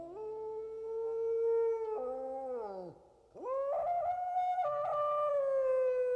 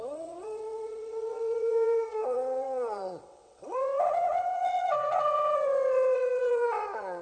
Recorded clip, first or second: first